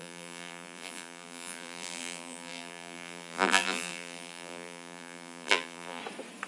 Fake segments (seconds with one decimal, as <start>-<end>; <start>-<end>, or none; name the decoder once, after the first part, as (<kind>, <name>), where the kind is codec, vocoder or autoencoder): 0.0-6.0 (vocoder, BigVGAN v2)